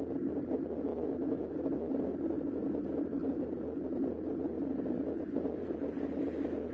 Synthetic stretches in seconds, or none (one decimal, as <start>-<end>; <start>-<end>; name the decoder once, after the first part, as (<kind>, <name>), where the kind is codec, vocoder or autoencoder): 0.9-1.9 (autoencoder, DAC-VAE)